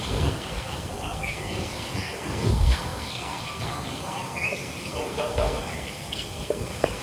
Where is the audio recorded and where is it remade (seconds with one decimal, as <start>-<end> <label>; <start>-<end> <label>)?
0.0-7.0 remade